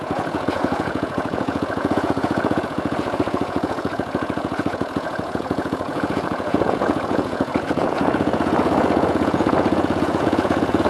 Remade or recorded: remade